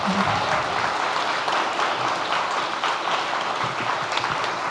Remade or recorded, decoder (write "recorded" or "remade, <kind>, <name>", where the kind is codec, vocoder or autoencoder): recorded